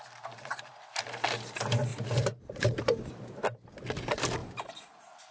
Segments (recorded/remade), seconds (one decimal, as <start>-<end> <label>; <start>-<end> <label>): 0.0-1.9 recorded; 1.9-3.1 remade; 3.1-4.4 recorded; 4.4-5.3 remade

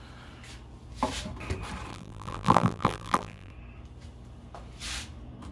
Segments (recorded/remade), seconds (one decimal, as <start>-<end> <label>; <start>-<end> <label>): 0.0-1.9 recorded; 1.9-3.5 remade; 3.5-5.5 recorded

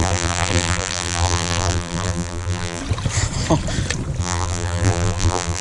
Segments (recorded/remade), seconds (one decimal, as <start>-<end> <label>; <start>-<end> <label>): 0.0-2.8 remade; 2.8-4.2 recorded; 4.2-5.6 remade